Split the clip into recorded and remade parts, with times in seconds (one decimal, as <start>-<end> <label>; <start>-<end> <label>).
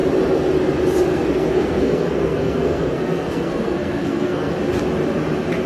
0.0-1.1 recorded; 1.1-4.5 remade; 4.5-5.7 recorded